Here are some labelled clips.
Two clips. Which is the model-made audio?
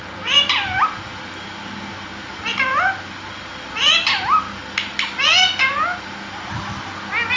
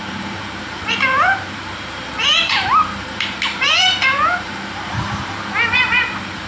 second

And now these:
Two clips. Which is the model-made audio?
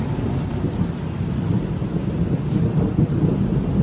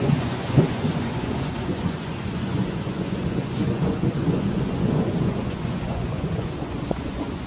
second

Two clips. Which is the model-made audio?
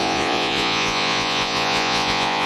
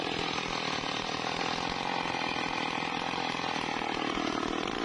first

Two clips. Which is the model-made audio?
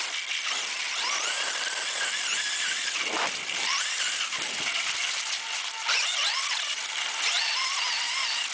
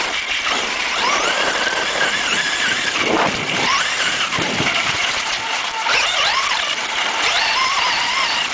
second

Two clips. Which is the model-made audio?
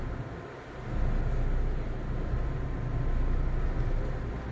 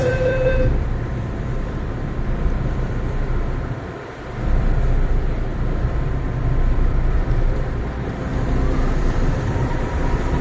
second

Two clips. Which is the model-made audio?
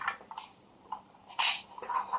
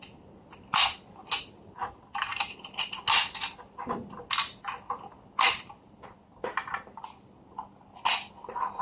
first